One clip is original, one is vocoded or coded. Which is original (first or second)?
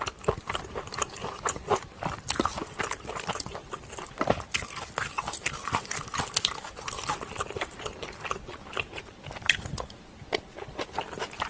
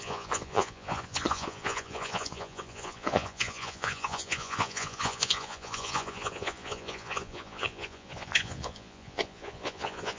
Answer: first